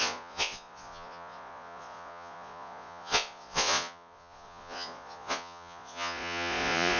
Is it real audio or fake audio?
fake